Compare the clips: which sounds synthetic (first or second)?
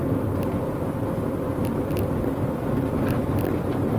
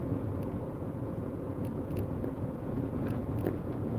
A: second